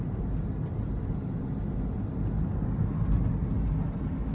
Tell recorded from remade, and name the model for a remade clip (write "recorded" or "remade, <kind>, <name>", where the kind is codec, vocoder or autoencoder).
recorded